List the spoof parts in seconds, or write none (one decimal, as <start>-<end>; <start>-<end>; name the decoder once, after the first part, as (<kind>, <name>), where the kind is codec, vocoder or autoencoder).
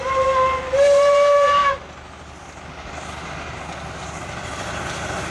none